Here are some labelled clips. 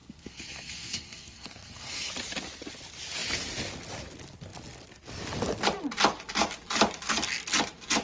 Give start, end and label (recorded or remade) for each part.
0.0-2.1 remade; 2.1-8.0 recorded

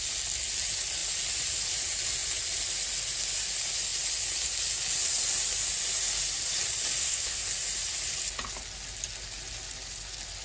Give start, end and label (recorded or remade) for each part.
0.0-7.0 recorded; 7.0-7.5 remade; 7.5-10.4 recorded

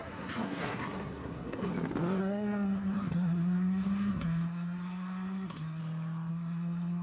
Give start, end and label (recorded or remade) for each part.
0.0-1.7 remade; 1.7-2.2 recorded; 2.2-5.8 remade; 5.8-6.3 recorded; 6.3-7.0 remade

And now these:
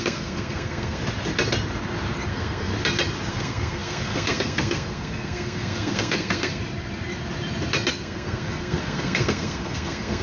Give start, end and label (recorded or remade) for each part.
0.0-1.0 remade; 1.0-2.3 recorded; 2.3-2.7 remade; 2.7-3.3 recorded; 3.3-6.6 remade; 6.6-7.9 recorded; 7.9-10.2 remade